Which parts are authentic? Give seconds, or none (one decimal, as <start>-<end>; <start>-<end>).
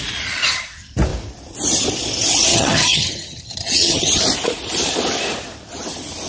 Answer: 0.0-2.5; 4.2-6.3